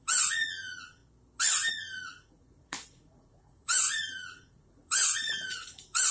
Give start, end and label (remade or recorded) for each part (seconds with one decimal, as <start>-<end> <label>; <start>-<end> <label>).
0.0-1.0 remade; 1.0-1.7 recorded; 1.7-6.1 remade